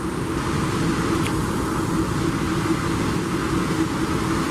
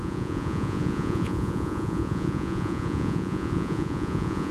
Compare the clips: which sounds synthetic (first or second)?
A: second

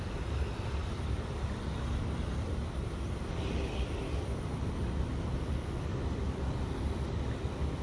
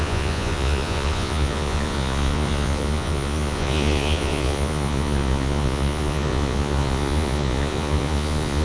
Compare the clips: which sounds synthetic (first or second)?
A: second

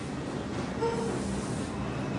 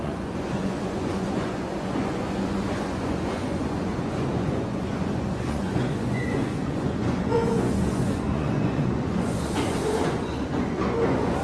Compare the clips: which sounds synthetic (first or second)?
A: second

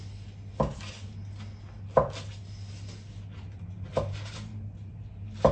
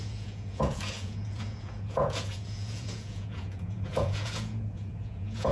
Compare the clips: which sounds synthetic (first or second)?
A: second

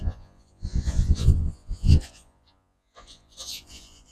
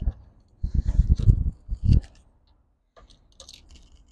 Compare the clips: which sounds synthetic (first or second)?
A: first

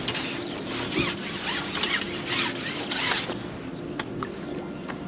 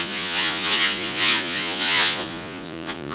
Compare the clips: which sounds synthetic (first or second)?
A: second